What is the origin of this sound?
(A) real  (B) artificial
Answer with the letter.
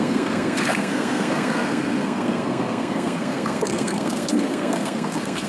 B